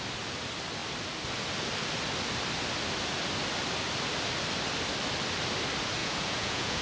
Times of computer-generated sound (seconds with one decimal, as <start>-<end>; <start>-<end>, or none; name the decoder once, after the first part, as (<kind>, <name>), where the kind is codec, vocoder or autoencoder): 6.0-6.8 (vocoder, Vocos)